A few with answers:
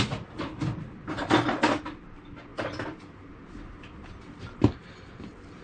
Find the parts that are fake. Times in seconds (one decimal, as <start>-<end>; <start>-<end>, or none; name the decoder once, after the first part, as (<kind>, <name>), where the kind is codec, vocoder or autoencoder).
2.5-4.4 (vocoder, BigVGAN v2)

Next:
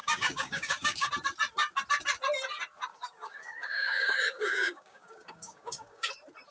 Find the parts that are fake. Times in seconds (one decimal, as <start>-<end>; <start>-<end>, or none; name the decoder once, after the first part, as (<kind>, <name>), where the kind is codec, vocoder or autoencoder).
0.0-1.1 (codec, DAC); 2.9-6.1

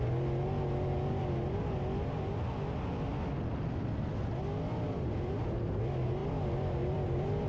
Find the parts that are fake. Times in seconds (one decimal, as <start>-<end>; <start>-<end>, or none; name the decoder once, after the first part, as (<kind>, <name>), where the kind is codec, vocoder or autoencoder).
6.2-7.5 (vocoder, BigVGAN v2)

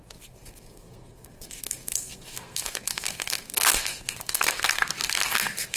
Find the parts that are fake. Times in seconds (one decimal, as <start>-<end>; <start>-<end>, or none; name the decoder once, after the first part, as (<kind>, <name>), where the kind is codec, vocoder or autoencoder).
0.0-5.8 (codec, SNAC)